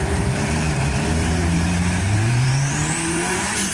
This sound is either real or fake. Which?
fake